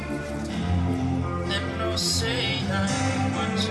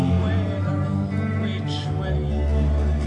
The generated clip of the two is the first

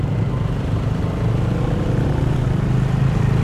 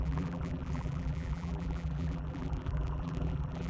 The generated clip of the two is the second